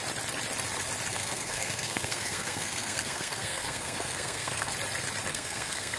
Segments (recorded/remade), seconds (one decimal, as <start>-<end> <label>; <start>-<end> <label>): 0.0-1.1 recorded; 1.1-4.7 remade; 4.7-5.3 recorded; 5.3-6.0 remade

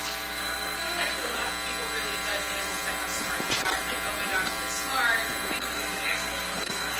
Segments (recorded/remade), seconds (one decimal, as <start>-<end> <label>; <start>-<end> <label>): 0.0-1.4 remade; 1.4-5.6 recorded; 5.6-7.0 remade